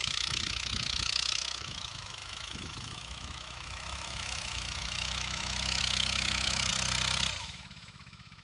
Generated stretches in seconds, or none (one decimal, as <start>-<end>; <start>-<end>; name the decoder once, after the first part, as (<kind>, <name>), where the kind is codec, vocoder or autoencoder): 0.0-6.7 (autoencoder, DAC-VAE); 7.4-8.4